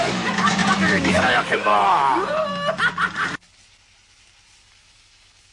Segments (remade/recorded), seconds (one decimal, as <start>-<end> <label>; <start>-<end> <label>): 0.0-1.7 remade; 1.7-4.6 recorded; 4.6-5.5 remade